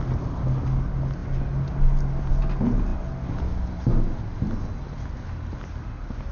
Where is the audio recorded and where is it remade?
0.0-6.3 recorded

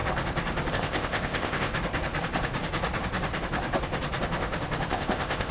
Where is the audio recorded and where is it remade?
0.0-0.7 recorded; 0.7-1.7 remade; 1.7-4.9 recorded; 4.9-5.5 remade

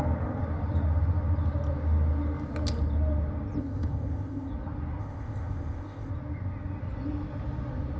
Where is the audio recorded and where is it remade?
0.0-3.6 recorded; 3.6-4.5 remade; 4.5-5.0 recorded; 5.0-6.1 remade; 6.1-8.0 recorded

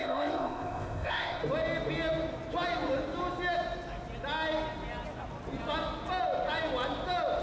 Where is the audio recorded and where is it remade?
0.0-1.4 remade; 1.4-7.4 recorded